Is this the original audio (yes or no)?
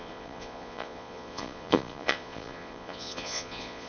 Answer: no